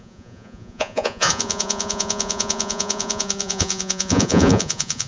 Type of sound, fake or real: fake